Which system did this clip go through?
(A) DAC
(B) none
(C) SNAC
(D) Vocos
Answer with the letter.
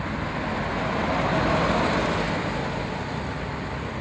B